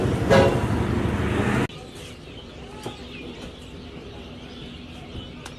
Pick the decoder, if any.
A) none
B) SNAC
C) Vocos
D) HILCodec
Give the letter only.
A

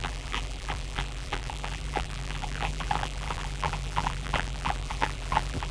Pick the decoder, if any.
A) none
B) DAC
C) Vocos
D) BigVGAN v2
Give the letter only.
D